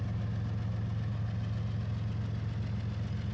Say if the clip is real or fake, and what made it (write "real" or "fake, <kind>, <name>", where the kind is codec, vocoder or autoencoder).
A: real